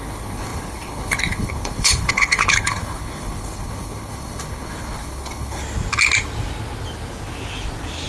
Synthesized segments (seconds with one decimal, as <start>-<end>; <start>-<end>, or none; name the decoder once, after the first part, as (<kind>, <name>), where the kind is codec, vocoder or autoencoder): 0.0-5.6 (codec, HILCodec)